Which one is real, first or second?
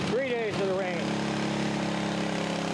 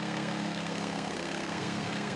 first